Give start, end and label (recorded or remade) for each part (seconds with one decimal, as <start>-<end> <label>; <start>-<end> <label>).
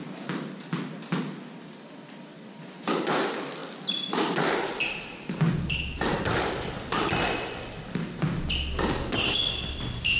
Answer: 0.0-10.2 recorded